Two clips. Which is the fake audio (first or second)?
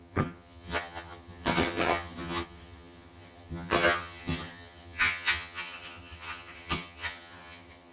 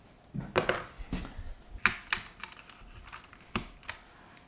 first